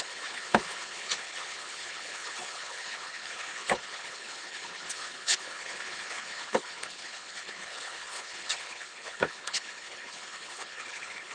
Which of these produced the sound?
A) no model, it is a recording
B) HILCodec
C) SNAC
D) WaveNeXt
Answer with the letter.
B